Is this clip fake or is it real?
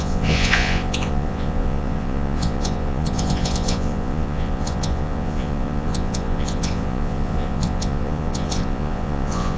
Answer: fake